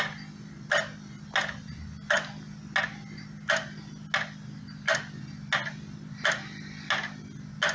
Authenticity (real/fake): real